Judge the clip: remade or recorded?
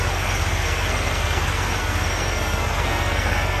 remade